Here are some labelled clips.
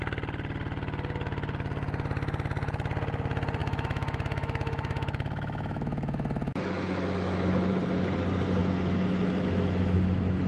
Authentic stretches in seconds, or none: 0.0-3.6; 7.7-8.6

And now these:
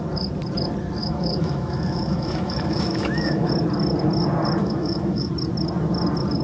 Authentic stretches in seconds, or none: 0.0-1.0; 3.5-4.6; 5.3-6.4

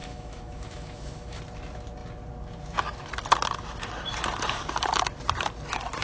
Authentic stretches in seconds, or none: 1.4-6.0

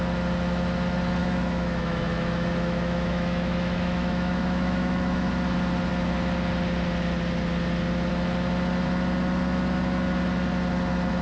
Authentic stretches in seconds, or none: 0.0-1.2; 5.3-11.2

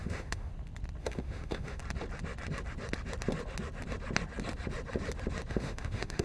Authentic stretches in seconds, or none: 0.5-1.0; 1.8-5.5

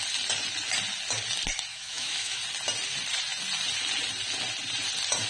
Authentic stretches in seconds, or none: 0.0-1.7; 2.4-5.3